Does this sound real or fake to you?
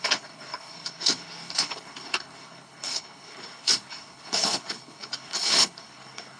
fake